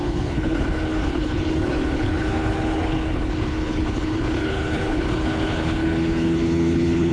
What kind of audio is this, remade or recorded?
remade